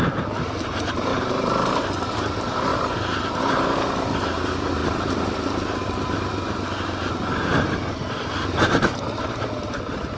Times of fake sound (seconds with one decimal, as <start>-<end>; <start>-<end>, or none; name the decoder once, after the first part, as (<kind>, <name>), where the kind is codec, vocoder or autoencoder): 1.1-1.8 (vocoder, BigVGAN v2)